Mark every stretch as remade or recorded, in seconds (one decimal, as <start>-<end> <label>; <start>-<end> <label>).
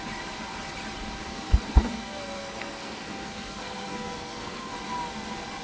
0.0-1.3 recorded; 1.3-4.7 remade; 4.7-5.6 recorded